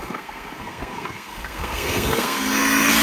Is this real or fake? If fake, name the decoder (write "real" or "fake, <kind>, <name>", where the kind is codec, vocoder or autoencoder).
fake, codec, SNAC